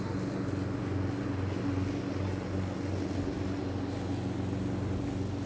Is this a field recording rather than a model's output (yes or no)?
yes